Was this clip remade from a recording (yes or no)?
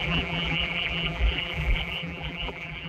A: yes